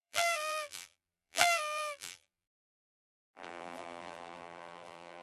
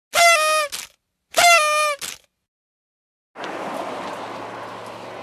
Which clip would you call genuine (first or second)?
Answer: second